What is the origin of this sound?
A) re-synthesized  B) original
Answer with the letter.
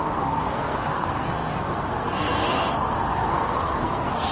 A